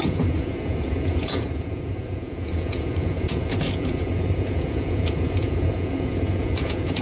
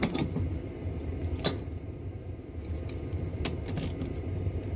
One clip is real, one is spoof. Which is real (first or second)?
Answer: second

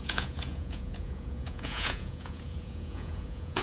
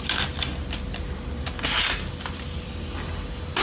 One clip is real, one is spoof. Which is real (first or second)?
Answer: second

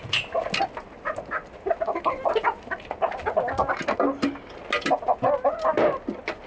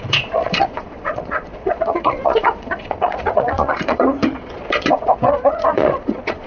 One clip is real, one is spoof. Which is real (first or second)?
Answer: first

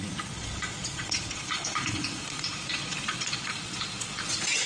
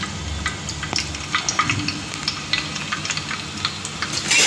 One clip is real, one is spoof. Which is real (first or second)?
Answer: second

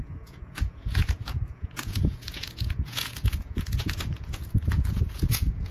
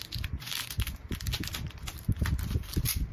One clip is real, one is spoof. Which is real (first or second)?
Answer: second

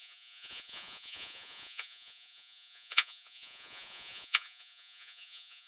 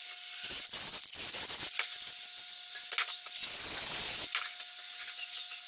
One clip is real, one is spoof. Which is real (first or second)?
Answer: second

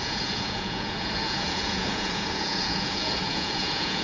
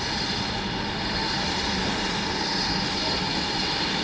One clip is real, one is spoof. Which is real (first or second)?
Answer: second